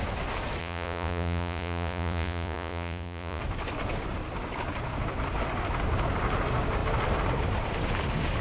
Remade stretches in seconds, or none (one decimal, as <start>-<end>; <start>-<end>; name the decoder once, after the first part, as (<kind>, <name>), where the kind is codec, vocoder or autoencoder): 0.6-3.4 (vocoder, Vocos)